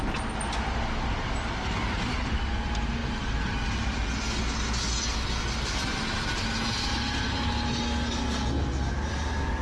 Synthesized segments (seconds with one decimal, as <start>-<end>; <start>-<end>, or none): none